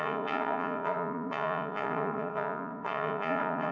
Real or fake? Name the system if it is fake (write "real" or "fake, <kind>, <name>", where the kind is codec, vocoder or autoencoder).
fake, vocoder, Vocos